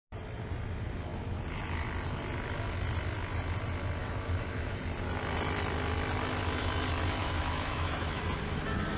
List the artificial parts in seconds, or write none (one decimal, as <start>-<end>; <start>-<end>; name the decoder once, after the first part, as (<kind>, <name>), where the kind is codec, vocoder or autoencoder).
4.0-4.8 (autoencoder, DAC-VAE); 7.2-8.2